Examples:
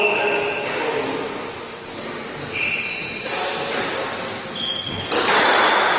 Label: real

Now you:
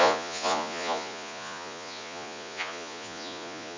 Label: fake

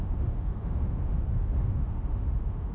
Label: fake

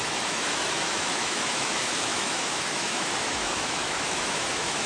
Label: fake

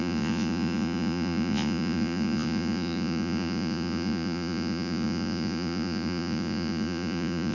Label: fake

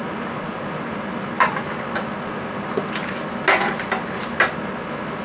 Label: real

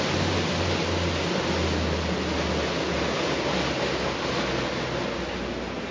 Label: real